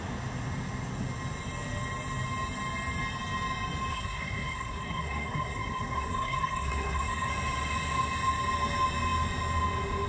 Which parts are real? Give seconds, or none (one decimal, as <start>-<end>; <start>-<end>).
0.0-3.9; 7.3-10.1